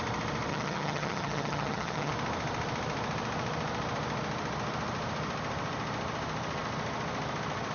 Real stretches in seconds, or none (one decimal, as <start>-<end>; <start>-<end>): 0.0-0.5; 2.1-7.7